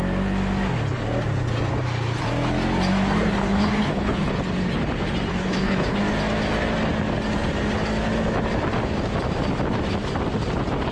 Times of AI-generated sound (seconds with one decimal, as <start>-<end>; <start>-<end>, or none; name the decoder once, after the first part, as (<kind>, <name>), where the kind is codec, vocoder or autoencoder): 3.4-4.3 (codec, HILCodec); 5.3-6.0